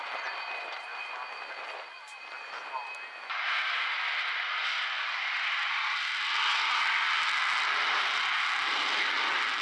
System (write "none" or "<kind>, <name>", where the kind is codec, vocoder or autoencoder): none